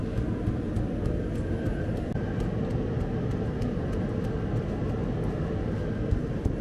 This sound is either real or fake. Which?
real